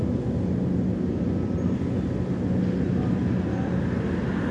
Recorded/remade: recorded